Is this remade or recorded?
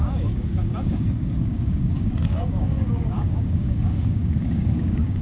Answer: remade